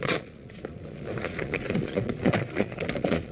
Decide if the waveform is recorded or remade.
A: remade